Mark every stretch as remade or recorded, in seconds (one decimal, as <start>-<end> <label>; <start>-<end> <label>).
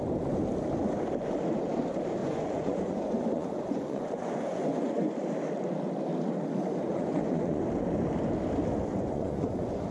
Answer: 0.0-2.2 recorded; 2.2-5.1 remade; 5.1-6.9 recorded; 6.9-7.6 remade; 7.6-8.9 recorded; 8.9-9.9 remade